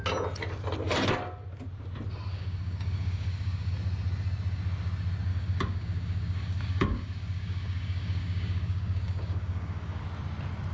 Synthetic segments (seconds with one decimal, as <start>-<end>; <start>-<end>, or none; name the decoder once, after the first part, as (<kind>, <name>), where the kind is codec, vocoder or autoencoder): 2.3-3.7 (codec, DAC); 5.3-10.0